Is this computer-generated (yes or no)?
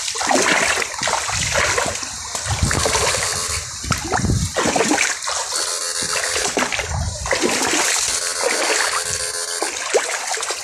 no